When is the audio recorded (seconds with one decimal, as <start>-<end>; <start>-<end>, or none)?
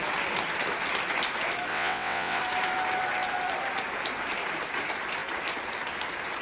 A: 0.0-1.7; 2.4-6.4